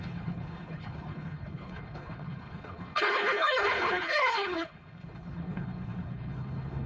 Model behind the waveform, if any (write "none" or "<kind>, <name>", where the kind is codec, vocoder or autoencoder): codec, HILCodec